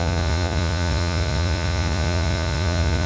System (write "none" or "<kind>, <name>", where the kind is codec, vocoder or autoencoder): vocoder, Vocos